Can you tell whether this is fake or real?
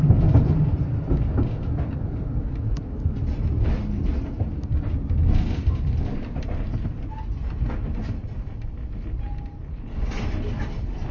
real